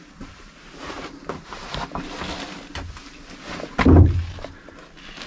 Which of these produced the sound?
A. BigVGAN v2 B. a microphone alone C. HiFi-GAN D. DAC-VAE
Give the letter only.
B